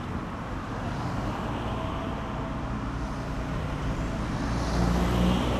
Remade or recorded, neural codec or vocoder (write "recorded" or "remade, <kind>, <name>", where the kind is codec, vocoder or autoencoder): recorded